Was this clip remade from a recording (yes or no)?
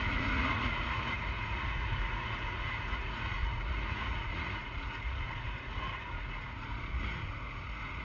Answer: yes